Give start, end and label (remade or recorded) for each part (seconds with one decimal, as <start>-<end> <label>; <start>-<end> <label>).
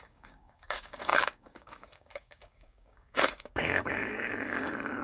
0.0-5.0 remade